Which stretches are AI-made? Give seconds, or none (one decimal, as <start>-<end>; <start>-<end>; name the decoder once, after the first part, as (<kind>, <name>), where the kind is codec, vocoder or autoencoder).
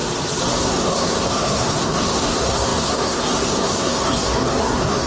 0.6-5.1 (codec, SNAC)